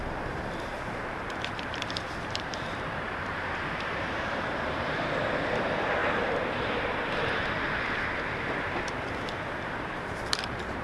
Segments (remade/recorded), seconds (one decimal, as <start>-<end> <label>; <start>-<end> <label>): 0.0-6.0 remade; 6.0-9.5 recorded; 9.5-10.8 remade